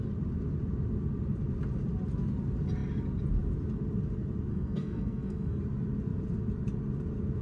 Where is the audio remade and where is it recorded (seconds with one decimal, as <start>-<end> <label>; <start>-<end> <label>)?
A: 0.0-4.5 recorded; 4.5-5.6 remade; 5.6-7.4 recorded